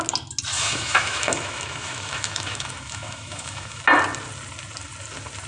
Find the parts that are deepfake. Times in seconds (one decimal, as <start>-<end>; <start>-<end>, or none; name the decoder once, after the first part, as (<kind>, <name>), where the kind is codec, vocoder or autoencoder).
0.5-3.8 (autoencoder, DAC-VAE)

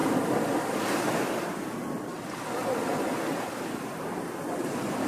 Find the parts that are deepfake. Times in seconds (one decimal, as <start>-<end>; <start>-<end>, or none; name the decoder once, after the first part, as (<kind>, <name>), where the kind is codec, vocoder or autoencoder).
none